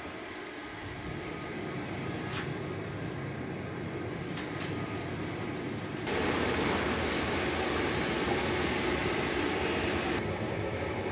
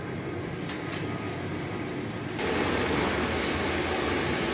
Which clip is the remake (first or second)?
first